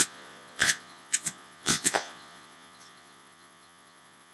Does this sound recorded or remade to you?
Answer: remade